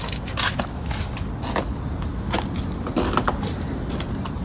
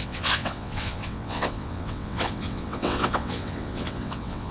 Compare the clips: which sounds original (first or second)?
first